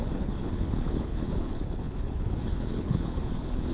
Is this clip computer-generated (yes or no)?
yes